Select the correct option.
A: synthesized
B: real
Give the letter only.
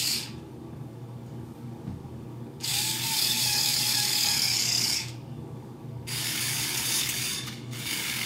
A